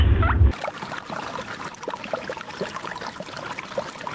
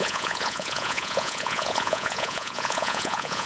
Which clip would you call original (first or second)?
first